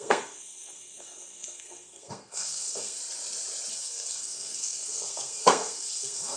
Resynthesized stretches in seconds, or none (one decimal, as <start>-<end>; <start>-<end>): 0.0-3.0; 3.7-6.4

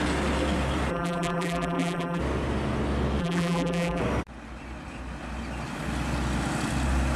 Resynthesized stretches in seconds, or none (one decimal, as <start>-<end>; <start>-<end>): 0.9-2.2; 3.2-4.0

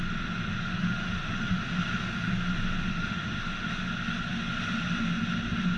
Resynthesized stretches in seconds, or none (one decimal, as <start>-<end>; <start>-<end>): 0.5-1.6; 2.9-3.7

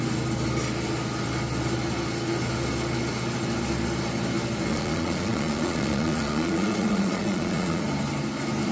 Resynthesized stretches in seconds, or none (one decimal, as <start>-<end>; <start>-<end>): 4.7-7.8

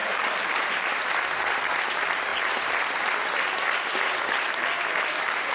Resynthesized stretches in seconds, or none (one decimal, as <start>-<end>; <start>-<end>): 0.0-1.6

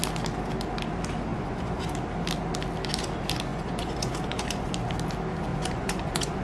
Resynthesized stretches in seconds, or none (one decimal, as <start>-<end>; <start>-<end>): 1.3-1.9; 3.5-4.7; 5.5-6.4